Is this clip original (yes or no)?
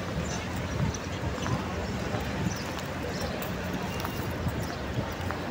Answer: yes